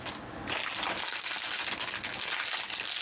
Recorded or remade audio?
recorded